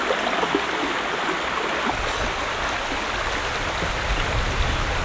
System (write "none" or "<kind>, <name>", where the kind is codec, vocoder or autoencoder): none